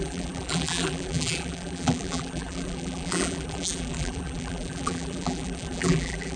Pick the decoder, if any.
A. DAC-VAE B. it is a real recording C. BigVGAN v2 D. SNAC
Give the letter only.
C